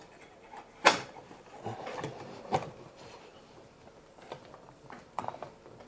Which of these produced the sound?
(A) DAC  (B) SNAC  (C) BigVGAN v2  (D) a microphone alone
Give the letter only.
C